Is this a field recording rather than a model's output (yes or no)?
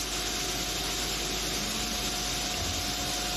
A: yes